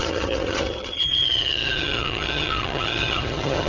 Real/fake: fake